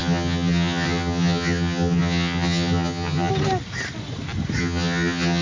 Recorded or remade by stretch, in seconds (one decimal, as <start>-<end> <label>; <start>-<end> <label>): 0.0-3.3 remade; 3.3-4.6 recorded; 4.6-5.4 remade